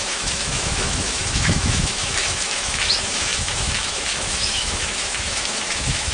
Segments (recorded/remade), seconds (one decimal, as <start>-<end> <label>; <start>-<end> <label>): 0.0-6.1 remade